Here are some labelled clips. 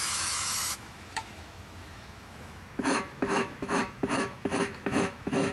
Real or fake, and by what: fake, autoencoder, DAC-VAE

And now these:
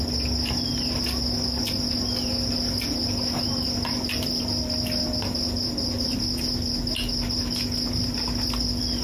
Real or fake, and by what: real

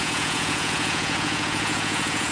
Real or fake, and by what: fake, vocoder, Vocos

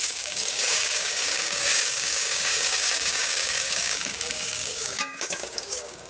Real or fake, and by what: fake, codec, DAC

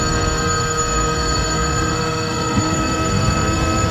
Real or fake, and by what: fake, codec, SNAC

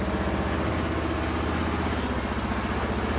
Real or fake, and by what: real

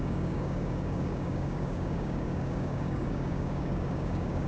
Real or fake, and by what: fake, codec, DAC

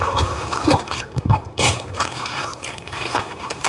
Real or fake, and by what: fake, codec, SNAC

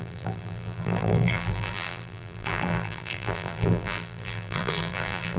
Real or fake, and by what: fake, vocoder, BigVGAN v2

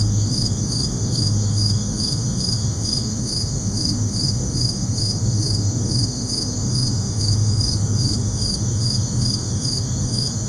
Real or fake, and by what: fake, autoencoder, DAC-VAE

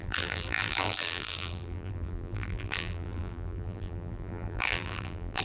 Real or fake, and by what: fake, vocoder, BigVGAN v2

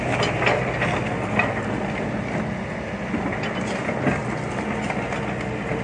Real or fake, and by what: real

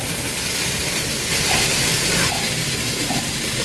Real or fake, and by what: real